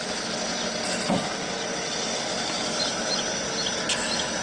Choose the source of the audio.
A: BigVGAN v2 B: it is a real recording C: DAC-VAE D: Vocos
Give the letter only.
B